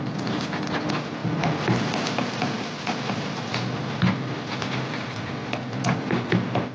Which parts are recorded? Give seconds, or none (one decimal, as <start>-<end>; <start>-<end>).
0.0-6.7